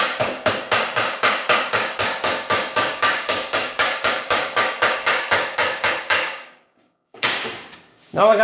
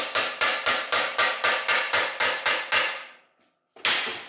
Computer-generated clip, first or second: first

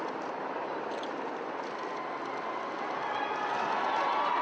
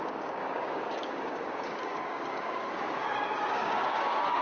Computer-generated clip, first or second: second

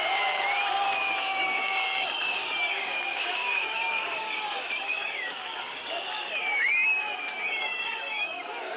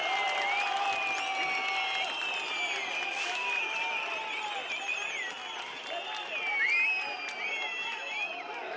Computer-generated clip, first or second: first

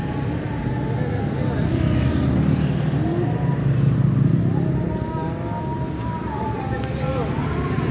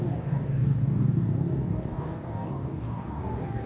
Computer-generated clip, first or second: second